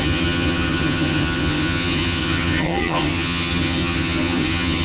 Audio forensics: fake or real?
fake